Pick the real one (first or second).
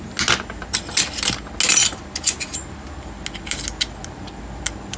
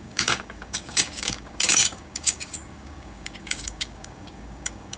first